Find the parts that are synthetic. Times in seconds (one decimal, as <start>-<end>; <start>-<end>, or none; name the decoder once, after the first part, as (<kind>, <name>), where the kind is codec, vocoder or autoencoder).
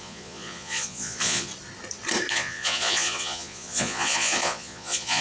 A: 0.0-1.5 (vocoder, Vocos); 2.3-5.2